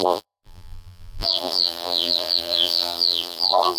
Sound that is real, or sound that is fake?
fake